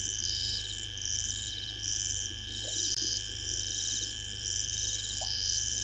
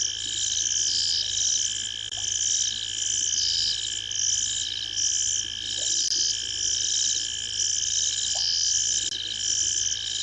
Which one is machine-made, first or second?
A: first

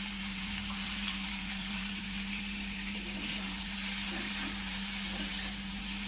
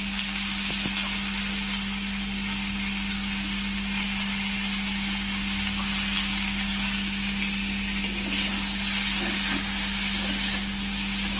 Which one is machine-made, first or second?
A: first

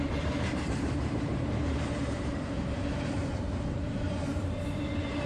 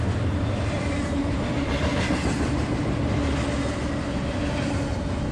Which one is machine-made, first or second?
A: first